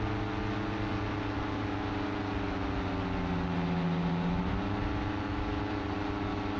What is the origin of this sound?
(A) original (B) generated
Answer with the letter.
A